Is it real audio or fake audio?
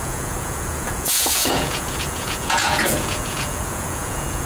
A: fake